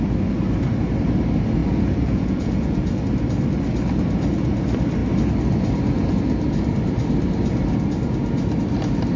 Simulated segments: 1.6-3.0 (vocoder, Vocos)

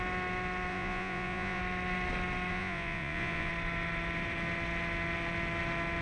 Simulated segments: 0.7-1.6 (vocoder, Vocos); 2.5-3.5

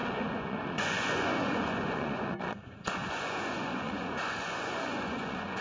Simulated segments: 0.0-5.6 (vocoder, Vocos)

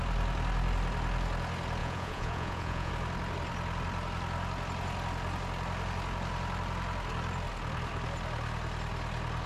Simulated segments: 1.8-2.9 (vocoder, Vocos)

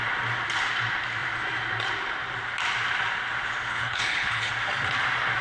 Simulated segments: 3.7-4.5 (codec, HILCodec)

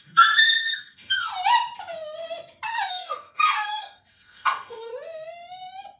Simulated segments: 0.0-1.3 (codec, SNAC); 2.9-4.9

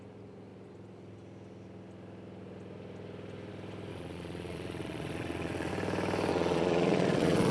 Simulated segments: 3.9-5.7 (vocoder, Vocos); 6.3-7.5